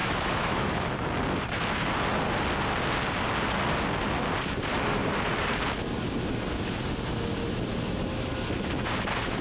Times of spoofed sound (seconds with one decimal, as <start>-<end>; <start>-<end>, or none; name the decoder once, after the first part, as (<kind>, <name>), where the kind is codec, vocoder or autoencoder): 0.0-1.1 (autoencoder, DAC-VAE)

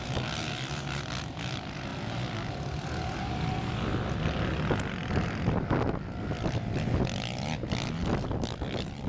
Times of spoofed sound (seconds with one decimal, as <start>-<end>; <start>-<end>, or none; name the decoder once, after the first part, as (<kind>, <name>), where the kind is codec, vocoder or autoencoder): none

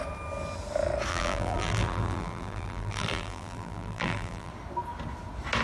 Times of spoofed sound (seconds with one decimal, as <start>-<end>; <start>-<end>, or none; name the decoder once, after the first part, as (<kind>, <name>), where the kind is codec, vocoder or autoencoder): 1.1-4.5 (vocoder, BigVGAN v2)

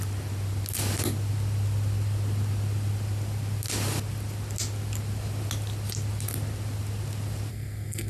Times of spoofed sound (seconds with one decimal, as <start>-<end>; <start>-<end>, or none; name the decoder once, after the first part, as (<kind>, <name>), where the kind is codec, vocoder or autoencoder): 7.5-8.1 (codec, SNAC)

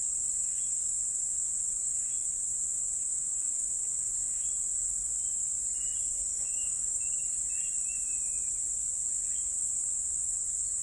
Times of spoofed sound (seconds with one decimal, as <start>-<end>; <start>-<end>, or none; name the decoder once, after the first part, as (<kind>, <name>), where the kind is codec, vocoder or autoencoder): 3.0-3.8 (autoencoder, DAC-VAE); 6.3-7.0

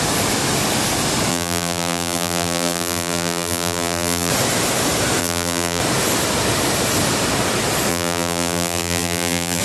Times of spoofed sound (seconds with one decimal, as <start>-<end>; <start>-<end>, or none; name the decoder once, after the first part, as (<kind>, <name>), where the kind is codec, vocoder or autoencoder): 1.3-4.3 (vocoder, BigVGAN v2); 5.2-5.8; 7.9-9.6

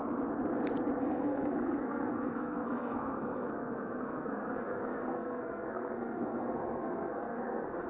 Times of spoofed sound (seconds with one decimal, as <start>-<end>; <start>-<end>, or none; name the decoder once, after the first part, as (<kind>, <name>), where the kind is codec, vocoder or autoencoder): 1.0-7.9 (codec, SNAC)